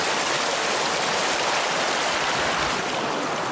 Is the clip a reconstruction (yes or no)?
no